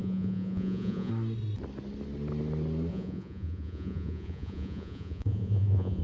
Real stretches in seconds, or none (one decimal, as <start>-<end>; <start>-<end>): 1.1-2.9